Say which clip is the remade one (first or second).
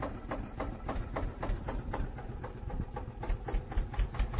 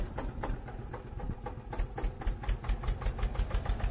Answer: first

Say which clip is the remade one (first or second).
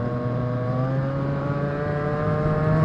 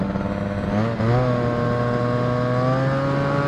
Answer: first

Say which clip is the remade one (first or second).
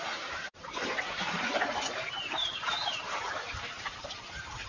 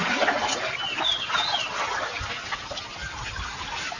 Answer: first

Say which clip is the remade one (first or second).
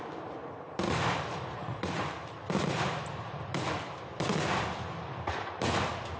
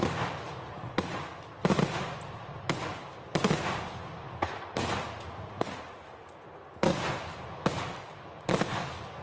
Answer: first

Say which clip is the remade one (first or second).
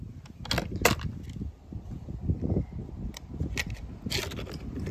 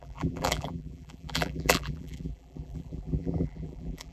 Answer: second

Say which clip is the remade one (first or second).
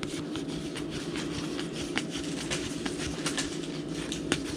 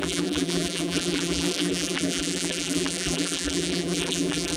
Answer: second